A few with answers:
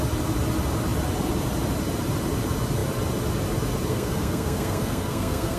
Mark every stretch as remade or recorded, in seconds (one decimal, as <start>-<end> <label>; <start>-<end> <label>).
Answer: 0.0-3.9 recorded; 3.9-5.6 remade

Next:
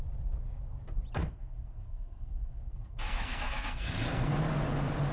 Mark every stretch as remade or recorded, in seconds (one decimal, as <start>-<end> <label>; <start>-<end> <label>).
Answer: 0.0-1.2 recorded; 1.2-4.3 remade; 4.3-5.1 recorded

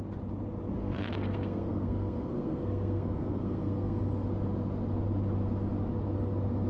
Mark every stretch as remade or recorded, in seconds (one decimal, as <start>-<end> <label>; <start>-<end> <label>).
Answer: 0.0-0.8 recorded; 0.8-4.0 remade; 4.0-6.7 recorded

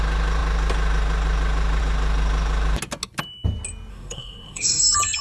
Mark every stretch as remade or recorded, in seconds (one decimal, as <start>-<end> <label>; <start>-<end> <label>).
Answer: 0.0-3.9 recorded; 3.9-4.8 remade; 4.8-5.2 recorded

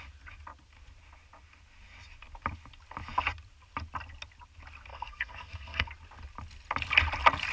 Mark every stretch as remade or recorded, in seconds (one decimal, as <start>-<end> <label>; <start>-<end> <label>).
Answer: 0.0-4.9 recorded; 4.9-5.9 remade; 5.9-7.5 recorded

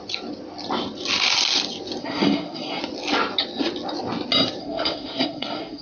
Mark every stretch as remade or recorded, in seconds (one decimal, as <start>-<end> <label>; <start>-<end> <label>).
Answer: 0.0-2.0 recorded; 2.0-2.8 remade; 2.8-4.6 recorded; 4.6-5.8 remade